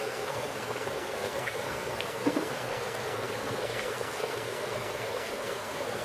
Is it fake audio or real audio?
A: fake